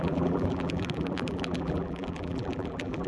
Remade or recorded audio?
remade